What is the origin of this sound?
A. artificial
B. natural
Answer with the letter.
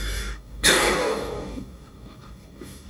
A